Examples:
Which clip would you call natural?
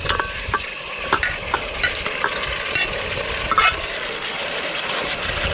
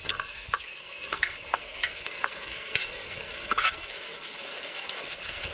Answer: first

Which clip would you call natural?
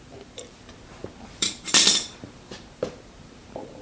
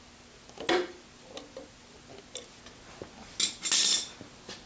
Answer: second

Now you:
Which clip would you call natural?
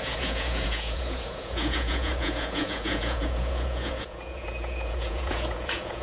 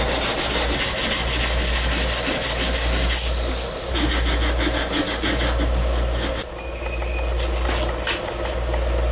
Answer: second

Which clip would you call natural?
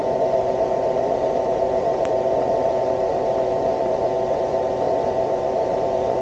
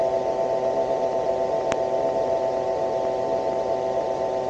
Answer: second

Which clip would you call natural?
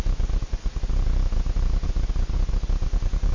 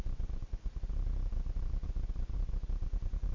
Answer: first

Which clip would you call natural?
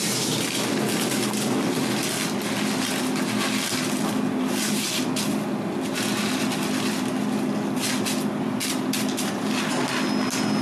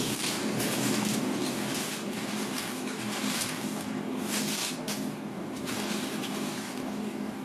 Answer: first